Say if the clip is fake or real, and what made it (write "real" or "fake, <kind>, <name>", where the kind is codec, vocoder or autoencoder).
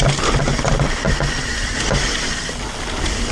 real